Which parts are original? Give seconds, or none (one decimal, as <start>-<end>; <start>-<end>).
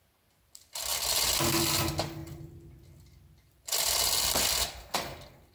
0.0-5.5